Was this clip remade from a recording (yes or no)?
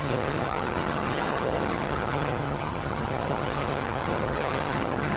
yes